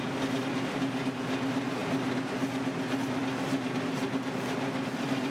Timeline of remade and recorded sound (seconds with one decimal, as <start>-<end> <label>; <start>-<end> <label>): 0.0-5.3 recorded